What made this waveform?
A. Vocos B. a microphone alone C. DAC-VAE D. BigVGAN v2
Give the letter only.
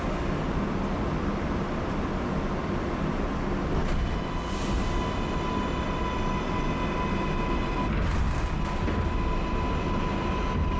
B